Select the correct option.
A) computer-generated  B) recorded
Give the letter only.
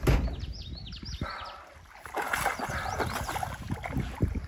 B